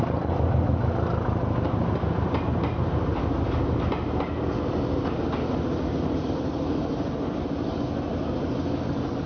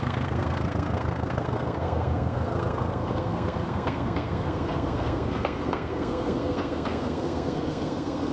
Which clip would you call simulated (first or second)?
second